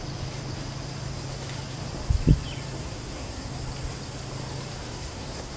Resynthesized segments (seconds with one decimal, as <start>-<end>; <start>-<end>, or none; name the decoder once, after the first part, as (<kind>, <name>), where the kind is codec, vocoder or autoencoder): 2.8-3.5 (codec, SNAC); 4.8-5.6